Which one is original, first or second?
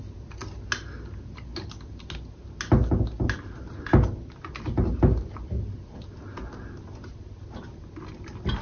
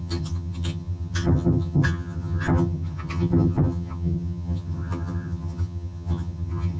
first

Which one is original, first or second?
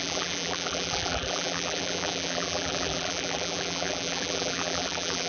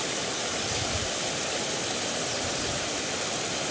second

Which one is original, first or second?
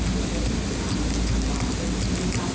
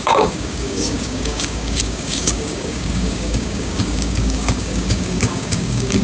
first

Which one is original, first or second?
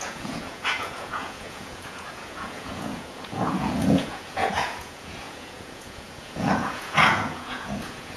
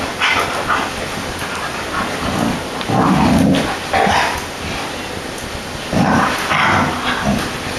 second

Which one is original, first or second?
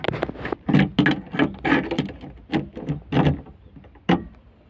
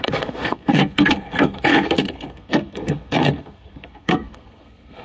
first